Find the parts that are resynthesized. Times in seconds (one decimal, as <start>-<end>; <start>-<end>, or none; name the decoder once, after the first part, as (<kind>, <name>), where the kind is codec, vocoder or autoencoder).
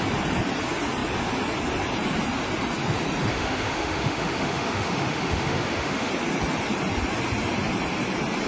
3.3-6.1 (autoencoder, DAC-VAE)